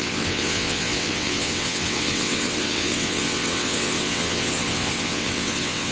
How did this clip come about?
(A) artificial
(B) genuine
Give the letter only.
A